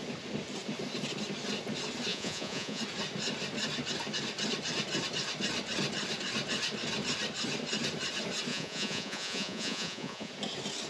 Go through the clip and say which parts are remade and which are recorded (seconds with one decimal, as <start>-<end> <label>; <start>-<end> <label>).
0.0-2.1 recorded; 2.1-2.8 remade; 2.8-8.5 recorded; 8.5-10.3 remade; 10.3-10.9 recorded